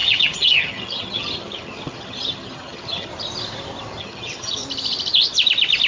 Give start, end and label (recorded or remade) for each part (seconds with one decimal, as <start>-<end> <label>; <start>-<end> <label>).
0.0-3.1 remade; 3.1-4.0 recorded; 4.0-4.6 remade; 4.6-5.9 recorded

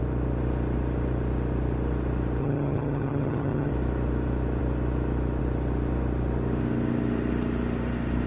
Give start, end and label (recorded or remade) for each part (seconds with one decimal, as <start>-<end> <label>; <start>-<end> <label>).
0.0-2.4 recorded; 2.4-3.7 remade; 3.7-8.3 recorded

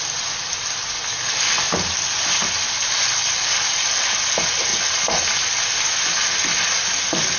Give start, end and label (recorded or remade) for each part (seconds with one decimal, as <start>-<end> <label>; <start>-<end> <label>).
0.0-7.4 recorded

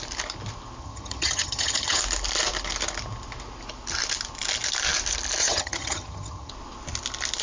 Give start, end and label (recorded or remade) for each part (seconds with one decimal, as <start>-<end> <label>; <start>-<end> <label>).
0.0-0.8 recorded; 0.8-2.0 remade; 2.0-5.4 recorded; 5.4-6.5 remade; 6.5-7.4 recorded